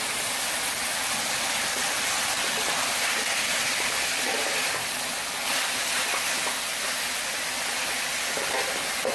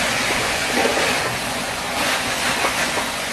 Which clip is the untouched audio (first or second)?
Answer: first